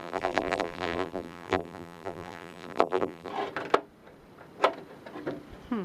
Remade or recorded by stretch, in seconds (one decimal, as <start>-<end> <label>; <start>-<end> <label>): 0.0-3.3 remade; 3.3-5.8 recorded